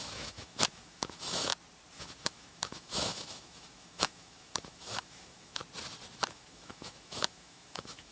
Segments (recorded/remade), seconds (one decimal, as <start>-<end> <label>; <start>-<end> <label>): 0.0-1.5 remade; 1.5-2.0 recorded; 2.0-5.6 remade; 5.6-6.3 recorded; 6.3-8.1 remade